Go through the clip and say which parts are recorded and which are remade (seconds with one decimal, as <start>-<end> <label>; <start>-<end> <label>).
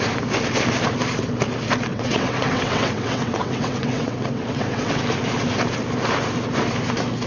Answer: 0.0-1.9 recorded; 1.9-5.0 remade; 5.0-7.3 recorded